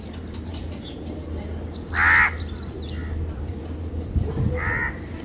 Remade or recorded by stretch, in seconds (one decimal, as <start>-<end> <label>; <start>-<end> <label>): 0.0-5.2 recorded